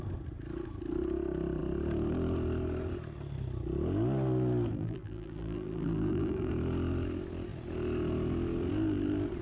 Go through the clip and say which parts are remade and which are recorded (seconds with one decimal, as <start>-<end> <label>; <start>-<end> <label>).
0.0-4.7 recorded; 4.7-6.5 remade; 6.5-9.4 recorded